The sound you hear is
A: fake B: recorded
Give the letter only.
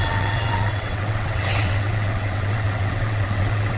A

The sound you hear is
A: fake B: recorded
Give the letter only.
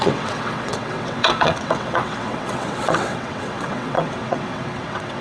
A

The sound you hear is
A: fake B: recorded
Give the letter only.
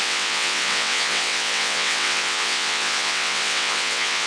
A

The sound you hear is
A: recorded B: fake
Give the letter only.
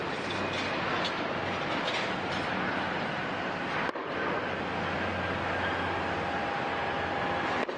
A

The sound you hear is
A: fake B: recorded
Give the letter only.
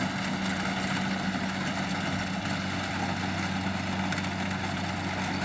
B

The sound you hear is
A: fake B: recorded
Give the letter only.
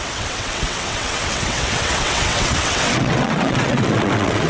A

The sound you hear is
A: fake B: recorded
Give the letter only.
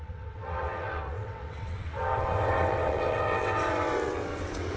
A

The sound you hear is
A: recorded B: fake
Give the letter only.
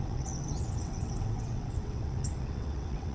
B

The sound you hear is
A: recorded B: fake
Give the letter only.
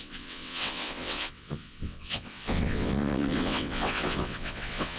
B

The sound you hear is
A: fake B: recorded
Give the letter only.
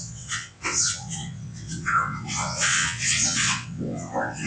A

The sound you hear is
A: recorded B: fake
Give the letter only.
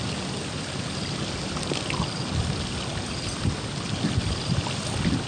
A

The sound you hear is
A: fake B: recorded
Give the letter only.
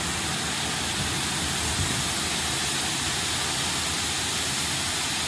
B